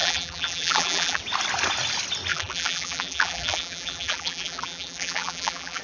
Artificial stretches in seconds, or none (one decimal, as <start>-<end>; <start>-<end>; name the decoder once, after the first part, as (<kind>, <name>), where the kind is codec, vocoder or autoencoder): 0.0-1.2 (vocoder, BigVGAN v2); 2.3-5.8